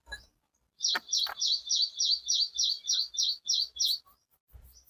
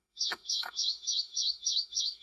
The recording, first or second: first